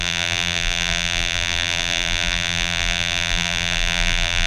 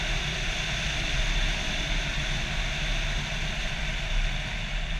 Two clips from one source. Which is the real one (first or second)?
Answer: second